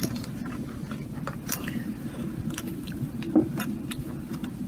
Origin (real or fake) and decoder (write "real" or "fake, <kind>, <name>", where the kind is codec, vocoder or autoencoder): fake, vocoder, BigVGAN v2